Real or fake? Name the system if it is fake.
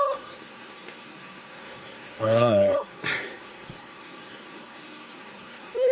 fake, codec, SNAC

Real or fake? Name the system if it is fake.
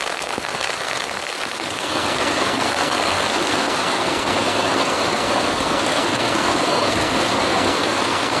fake, codec, SNAC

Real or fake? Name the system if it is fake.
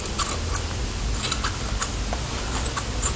real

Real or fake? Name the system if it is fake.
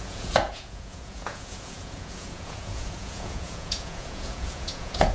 fake, vocoder, Vocos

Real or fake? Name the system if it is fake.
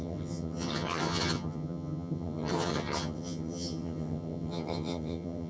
fake, vocoder, HiFi-GAN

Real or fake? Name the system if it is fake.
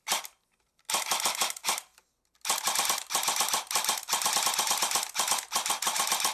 real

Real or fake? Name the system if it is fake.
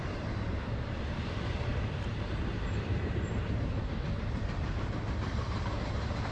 fake, vocoder, BigVGAN v2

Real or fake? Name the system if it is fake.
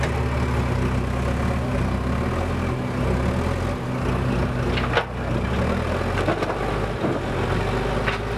real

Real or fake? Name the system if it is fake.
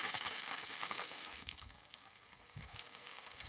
fake, codec, SNAC